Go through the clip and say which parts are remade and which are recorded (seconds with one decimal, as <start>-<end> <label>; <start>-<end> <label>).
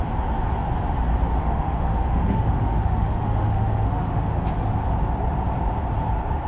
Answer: 0.0-1.4 recorded; 1.4-4.3 remade; 4.3-6.5 recorded